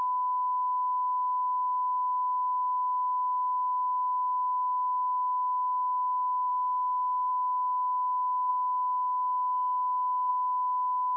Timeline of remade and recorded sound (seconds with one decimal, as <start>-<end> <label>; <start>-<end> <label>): 0.0-8.5 recorded; 8.5-10.3 remade; 10.3-11.2 recorded